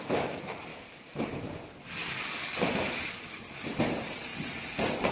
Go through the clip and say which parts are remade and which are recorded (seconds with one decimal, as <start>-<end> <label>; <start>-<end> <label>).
0.0-4.3 remade; 4.3-5.1 recorded